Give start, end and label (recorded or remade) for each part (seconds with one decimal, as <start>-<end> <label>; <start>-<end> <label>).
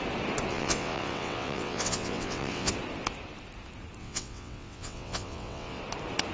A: 0.0-0.5 recorded; 0.5-2.7 remade; 2.7-4.0 recorded; 4.0-5.8 remade; 5.8-6.3 recorded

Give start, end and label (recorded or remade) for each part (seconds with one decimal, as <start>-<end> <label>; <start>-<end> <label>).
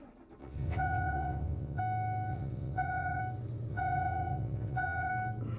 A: 0.0-0.4 recorded; 0.4-1.8 remade; 1.8-2.3 recorded; 2.3-3.2 remade; 3.2-3.7 recorded; 3.7-5.1 remade; 5.1-5.6 recorded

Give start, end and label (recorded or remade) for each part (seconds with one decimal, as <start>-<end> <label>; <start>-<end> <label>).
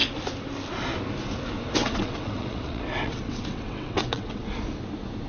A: 0.0-1.8 recorded; 1.8-4.4 remade; 4.4-5.3 recorded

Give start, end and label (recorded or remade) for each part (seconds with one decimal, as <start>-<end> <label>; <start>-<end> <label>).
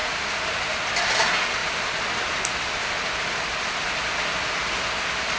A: 0.0-5.4 recorded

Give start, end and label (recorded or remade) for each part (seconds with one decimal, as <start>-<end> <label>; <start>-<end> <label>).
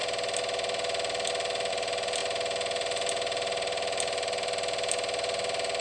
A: 0.0-5.8 recorded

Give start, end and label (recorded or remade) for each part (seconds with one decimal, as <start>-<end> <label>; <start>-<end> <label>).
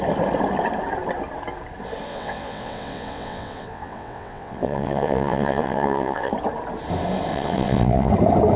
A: 0.0-2.1 recorded; 2.1-6.3 remade; 6.3-7.3 recorded; 7.3-8.1 remade; 8.1-8.6 recorded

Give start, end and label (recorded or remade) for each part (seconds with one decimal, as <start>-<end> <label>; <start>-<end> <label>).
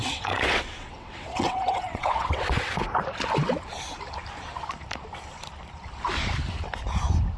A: 0.0-2.8 remade; 2.8-7.4 recorded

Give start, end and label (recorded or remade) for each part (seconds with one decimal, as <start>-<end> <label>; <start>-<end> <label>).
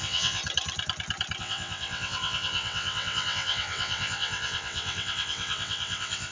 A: 0.0-0.4 remade; 0.4-1.4 recorded; 1.4-6.3 remade